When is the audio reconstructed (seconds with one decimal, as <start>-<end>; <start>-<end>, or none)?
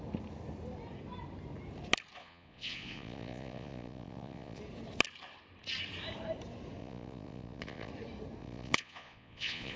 2.2-4.6; 6.8-7.9; 8.4-9.8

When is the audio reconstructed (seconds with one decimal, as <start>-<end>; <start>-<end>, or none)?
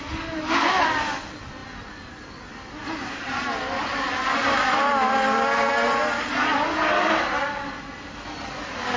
none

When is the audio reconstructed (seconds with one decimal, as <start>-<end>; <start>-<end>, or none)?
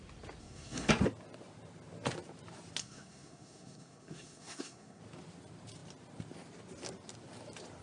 0.4-0.9; 2.8-5.0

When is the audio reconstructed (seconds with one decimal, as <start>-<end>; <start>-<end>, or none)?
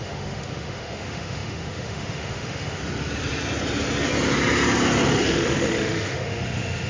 0.0-2.8; 5.2-6.9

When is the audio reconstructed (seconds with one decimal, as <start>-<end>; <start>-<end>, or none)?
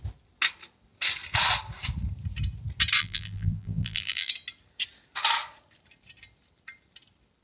3.0-4.3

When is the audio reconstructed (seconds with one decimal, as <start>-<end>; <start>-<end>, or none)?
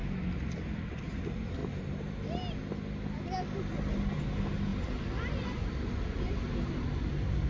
none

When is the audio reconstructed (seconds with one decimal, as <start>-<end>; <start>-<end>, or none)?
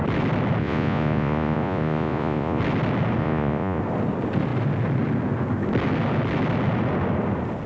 0.6-2.6; 3.2-3.8